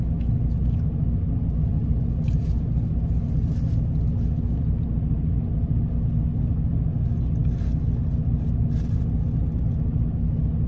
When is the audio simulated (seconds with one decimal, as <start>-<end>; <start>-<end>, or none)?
none